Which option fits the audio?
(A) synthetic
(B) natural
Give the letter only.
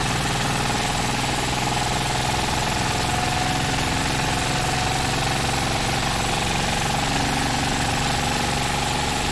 B